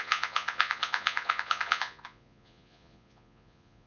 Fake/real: fake